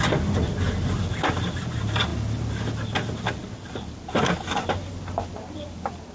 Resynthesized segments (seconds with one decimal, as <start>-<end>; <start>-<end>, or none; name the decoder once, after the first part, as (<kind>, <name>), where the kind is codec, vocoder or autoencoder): none